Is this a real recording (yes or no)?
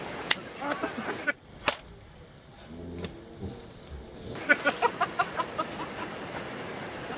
yes